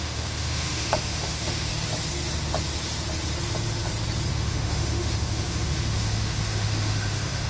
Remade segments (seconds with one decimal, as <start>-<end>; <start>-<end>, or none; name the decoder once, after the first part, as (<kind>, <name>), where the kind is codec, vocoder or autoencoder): 0.0-1.7 (autoencoder, DAC-VAE); 4.3-7.5